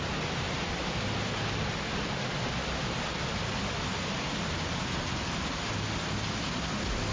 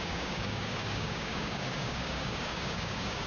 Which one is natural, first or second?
first